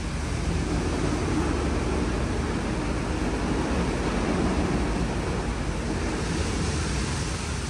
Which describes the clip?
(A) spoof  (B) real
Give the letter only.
B